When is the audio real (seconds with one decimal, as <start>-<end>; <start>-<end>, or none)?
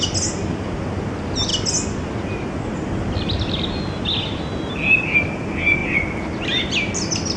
0.0-7.4